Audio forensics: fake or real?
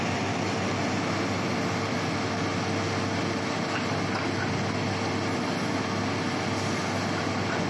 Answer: real